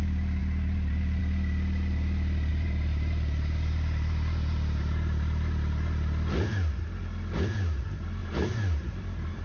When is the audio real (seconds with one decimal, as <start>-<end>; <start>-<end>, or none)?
0.0-0.4; 1.2-2.5; 6.5-8.2

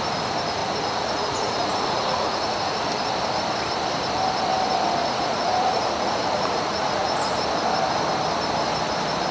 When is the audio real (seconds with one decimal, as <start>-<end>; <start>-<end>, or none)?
0.0-0.6; 2.9-5.0; 7.3-9.3

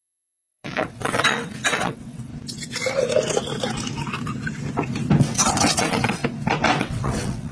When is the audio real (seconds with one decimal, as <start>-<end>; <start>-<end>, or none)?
2.3-5.2; 6.2-6.8

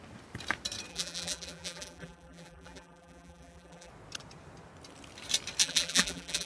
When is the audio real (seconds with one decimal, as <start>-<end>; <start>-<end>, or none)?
0.0-0.9; 3.9-5.6

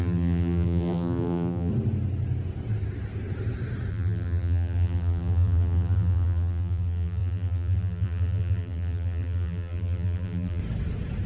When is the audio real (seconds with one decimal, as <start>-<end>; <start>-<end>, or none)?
1.7-3.9; 10.6-11.3